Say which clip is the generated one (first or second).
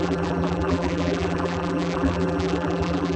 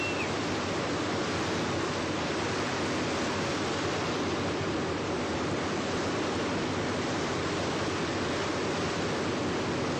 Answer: first